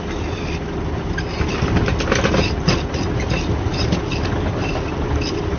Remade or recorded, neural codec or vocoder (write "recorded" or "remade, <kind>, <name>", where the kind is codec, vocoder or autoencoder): recorded